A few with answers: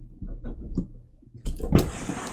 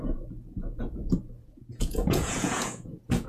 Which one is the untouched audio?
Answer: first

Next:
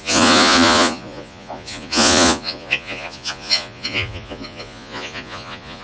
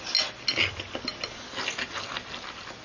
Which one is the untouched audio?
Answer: second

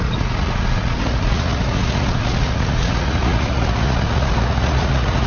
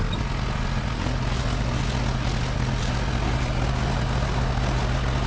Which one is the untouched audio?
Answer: second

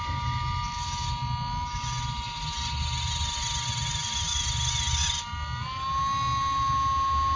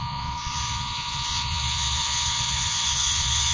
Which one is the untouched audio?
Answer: first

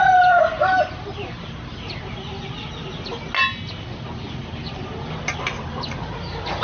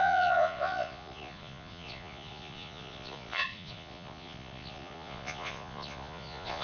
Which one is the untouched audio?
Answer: first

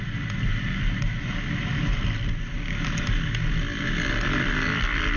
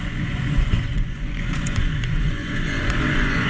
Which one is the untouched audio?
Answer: first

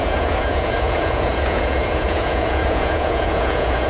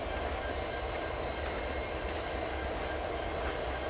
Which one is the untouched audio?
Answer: second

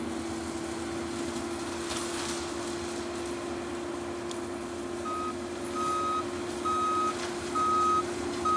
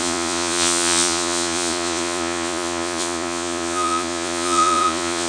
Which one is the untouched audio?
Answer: first